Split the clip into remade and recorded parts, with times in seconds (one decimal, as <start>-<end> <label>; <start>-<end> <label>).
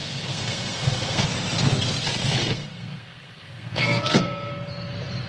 0.0-1.2 remade; 1.2-2.4 recorded; 2.4-4.5 remade; 4.5-5.3 recorded